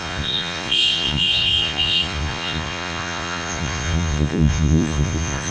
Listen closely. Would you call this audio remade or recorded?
remade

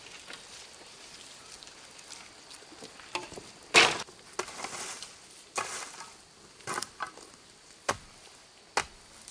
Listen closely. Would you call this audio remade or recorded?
recorded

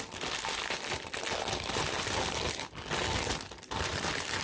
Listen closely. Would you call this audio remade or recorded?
recorded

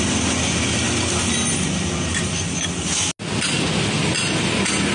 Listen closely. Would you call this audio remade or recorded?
recorded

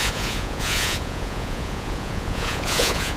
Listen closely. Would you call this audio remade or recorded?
remade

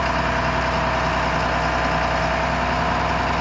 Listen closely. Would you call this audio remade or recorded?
recorded